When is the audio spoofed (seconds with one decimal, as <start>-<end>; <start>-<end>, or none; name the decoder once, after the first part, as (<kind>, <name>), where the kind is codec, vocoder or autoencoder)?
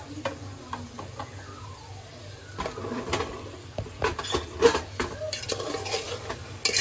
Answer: none